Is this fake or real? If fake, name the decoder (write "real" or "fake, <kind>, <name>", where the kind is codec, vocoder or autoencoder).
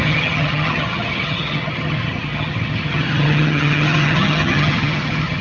fake, vocoder, HiFi-GAN